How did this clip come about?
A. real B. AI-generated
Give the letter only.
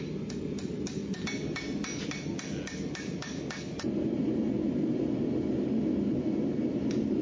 A